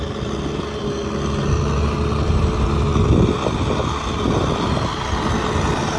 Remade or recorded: recorded